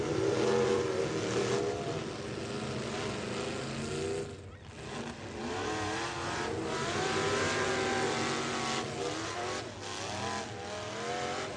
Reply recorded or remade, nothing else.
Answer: recorded